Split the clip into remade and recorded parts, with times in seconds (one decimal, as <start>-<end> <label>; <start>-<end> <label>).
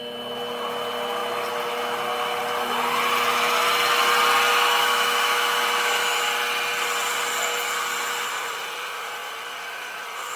0.0-4.5 recorded; 4.5-6.2 remade; 6.2-10.4 recorded